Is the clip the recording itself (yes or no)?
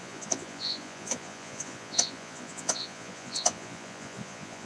no